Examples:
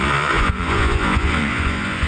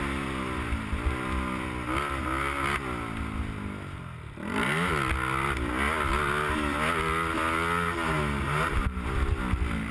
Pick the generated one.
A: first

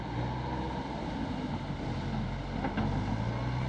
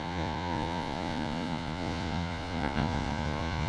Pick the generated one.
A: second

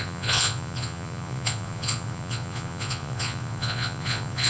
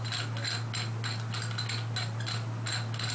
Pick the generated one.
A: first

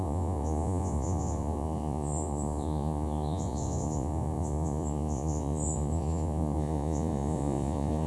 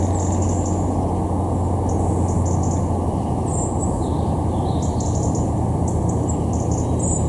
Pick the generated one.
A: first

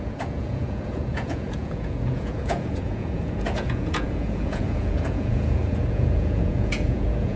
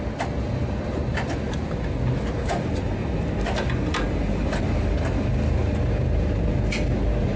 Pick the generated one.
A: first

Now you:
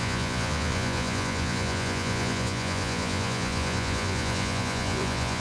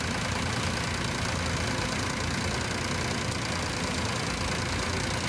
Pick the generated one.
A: first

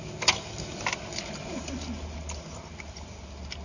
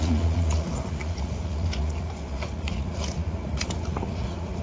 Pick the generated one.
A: second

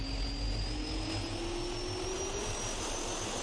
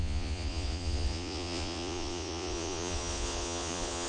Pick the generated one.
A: second